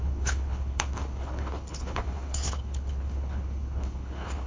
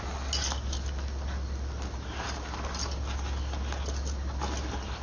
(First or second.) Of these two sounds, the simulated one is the first